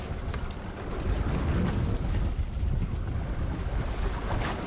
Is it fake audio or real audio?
real